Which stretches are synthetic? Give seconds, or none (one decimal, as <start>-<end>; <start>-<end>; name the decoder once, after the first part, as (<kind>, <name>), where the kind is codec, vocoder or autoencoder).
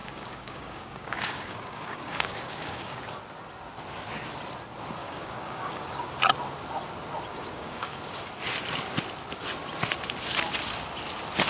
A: 0.0-3.0 (codec, DAC); 5.0-6.0; 7.3-8.0